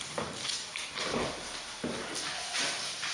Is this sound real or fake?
real